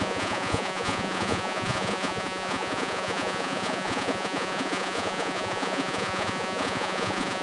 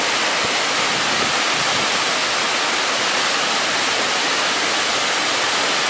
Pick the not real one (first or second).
first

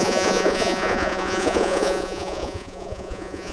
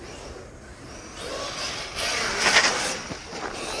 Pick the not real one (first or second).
first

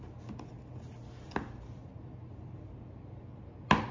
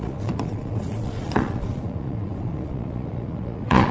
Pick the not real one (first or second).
second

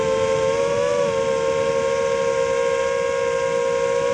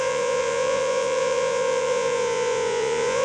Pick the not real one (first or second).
second